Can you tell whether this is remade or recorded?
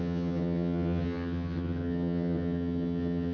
remade